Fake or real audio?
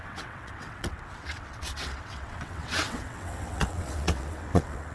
fake